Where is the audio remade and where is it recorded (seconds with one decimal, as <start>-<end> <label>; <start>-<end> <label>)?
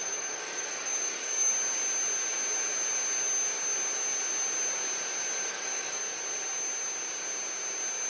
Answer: 0.0-1.5 remade; 1.5-5.5 recorded; 5.5-6.0 remade; 6.0-8.1 recorded